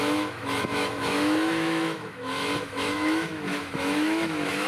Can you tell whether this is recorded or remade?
remade